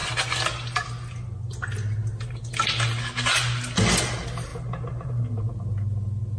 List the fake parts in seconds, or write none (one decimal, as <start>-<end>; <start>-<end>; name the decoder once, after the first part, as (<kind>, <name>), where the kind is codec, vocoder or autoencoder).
none